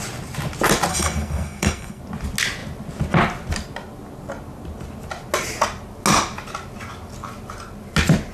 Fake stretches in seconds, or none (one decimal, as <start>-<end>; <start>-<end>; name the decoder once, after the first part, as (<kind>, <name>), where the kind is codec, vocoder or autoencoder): 0.9-2.0 (codec, SNAC)